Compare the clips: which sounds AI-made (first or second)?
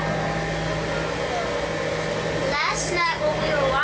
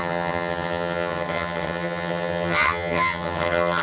second